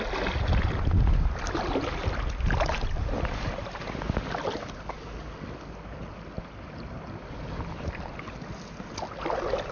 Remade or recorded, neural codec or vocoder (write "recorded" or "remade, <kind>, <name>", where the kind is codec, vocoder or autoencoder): recorded